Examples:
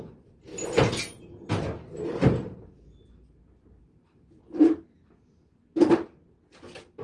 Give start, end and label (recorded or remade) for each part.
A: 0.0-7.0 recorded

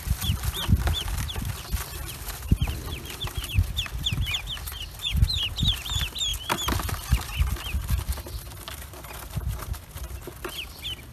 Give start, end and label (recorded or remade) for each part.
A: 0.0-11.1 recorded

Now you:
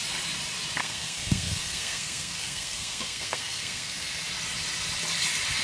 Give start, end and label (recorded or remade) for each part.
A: 0.0-0.8 recorded; 0.8-4.2 remade; 4.2-5.6 recorded

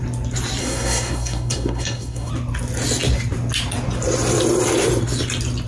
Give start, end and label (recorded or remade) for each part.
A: 0.0-0.6 recorded; 0.6-2.3 remade; 2.3-5.7 recorded

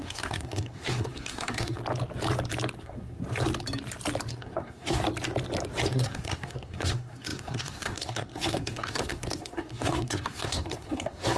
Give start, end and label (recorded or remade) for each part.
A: 0.0-1.8 remade; 1.8-2.8 recorded; 2.8-3.2 remade; 3.2-4.3 recorded; 4.3-5.0 remade; 5.0-5.9 recorded; 5.9-11.4 remade

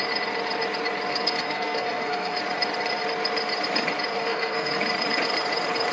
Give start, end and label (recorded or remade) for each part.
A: 0.0-1.1 recorded; 1.1-2.4 remade; 2.4-4.1 recorded; 4.1-4.7 remade; 4.7-5.9 recorded

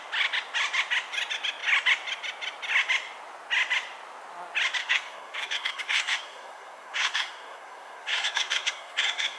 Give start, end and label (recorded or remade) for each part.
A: 0.0-4.8 recorded; 4.8-9.4 remade